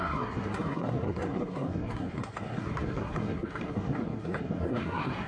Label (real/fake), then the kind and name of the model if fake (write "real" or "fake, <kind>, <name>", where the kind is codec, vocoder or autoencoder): fake, codec, SNAC